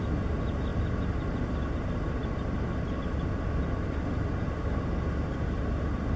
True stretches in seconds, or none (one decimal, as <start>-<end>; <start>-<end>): 0.0-6.2